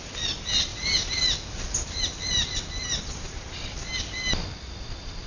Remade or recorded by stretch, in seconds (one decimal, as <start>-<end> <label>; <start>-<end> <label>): 0.0-5.3 recorded